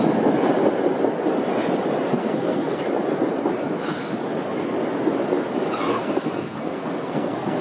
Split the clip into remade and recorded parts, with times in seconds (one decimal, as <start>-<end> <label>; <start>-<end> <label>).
0.0-2.1 recorded; 2.1-2.8 remade; 2.8-5.9 recorded; 5.9-7.6 remade